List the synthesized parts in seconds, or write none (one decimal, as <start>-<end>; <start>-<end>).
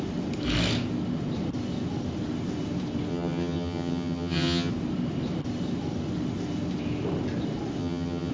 3.1-4.7; 7.8-8.3